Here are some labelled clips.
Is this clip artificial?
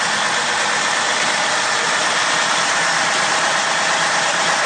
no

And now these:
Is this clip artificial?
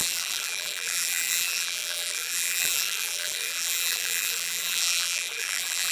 yes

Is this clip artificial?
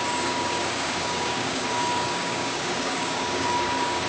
yes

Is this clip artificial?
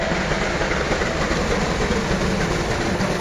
no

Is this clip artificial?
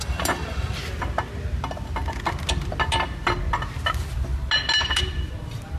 no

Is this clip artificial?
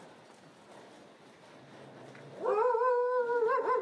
no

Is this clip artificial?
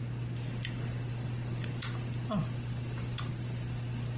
no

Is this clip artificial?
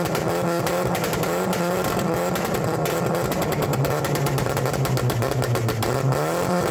no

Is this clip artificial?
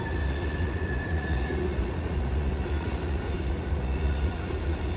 yes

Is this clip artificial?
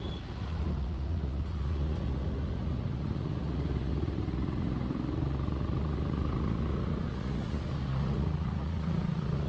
yes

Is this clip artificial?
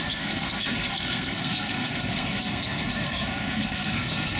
yes